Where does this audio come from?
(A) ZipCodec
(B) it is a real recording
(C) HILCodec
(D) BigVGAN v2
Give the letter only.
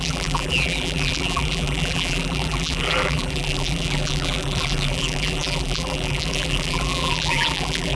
D